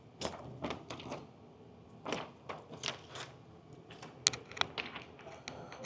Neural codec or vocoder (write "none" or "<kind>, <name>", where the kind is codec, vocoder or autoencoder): none